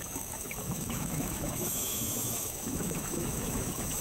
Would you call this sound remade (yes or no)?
yes